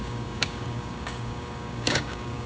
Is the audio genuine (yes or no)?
no